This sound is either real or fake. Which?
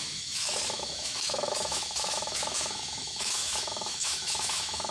fake